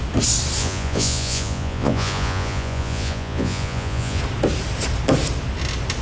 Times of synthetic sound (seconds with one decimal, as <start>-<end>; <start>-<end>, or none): 0.6-4.2